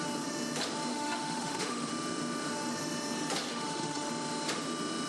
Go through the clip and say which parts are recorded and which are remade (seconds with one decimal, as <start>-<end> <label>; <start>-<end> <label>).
0.0-0.9 recorded; 0.9-1.9 remade; 1.9-3.5 recorded; 3.5-4.1 remade; 4.1-5.1 recorded